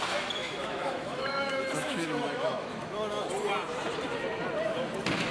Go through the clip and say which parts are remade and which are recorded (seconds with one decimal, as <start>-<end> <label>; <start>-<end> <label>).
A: 0.0-0.4 recorded; 0.4-3.3 remade; 3.3-5.3 recorded